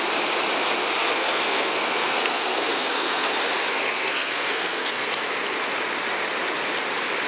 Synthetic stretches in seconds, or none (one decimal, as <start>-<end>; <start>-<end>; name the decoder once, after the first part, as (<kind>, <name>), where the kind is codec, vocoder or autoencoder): 1.0-3.3 (codec, SNAC); 3.7-5.3